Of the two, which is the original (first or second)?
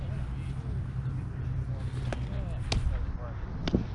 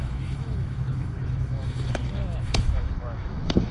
first